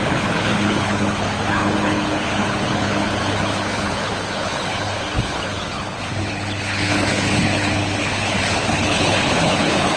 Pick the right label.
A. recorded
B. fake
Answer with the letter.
B